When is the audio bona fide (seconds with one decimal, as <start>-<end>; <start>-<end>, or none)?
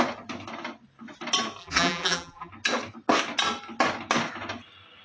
0.0-1.6; 2.5-5.0